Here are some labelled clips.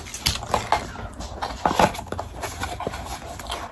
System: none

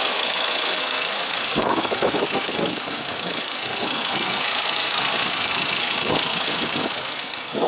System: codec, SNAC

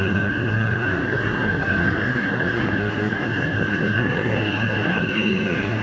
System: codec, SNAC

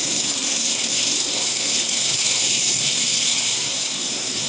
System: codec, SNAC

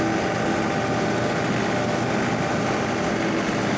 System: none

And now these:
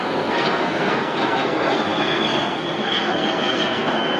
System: codec, SNAC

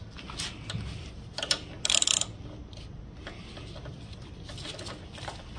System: none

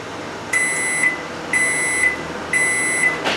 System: none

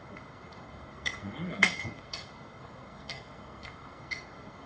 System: codec, SNAC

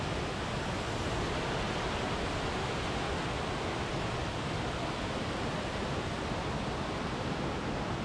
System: none